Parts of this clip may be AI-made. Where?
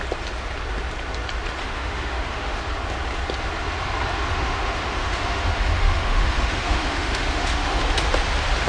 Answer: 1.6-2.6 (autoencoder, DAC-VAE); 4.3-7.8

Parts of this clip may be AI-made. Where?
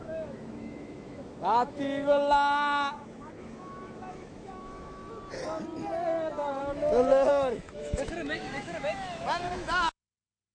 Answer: 0.0-5.0 (autoencoder, DAC-VAE); 6.6-10.5